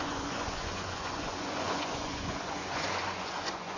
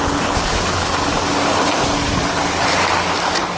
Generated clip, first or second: first